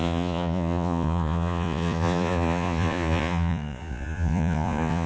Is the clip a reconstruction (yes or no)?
yes